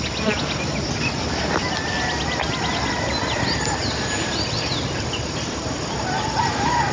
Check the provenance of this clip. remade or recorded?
recorded